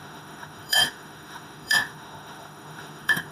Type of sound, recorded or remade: remade